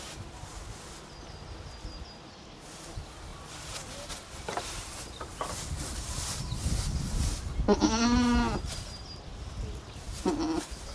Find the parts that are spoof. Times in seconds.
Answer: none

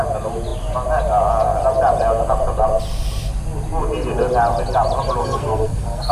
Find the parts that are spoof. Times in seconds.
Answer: 5.2-6.1 (codec, SNAC)

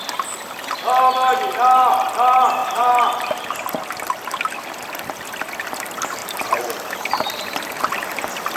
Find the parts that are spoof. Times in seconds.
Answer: 2.6-3.4 (vocoder, BigVGAN v2); 6.2-7.8

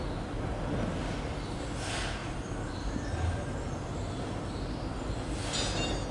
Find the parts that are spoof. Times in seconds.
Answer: 2.2-3.4 (vocoder, BigVGAN v2)

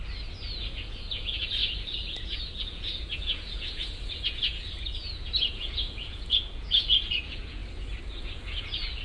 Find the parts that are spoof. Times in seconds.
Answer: 0.6-7.6 (vocoder, Vocos); 8.2-9.0

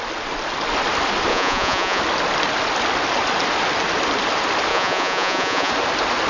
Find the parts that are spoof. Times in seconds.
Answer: 1.3-2.0 (vocoder, Vocos); 4.7-5.7

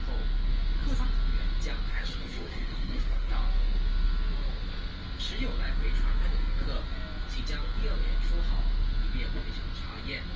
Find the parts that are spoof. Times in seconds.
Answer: 1.9-3.3 (codec, SNAC)